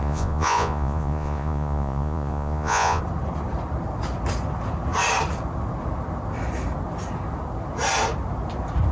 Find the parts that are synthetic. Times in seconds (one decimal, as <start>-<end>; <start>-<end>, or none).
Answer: 0.0-3.0